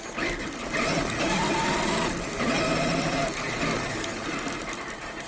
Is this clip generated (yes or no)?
no